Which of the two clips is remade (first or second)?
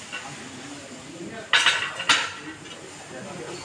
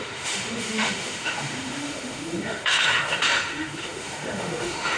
second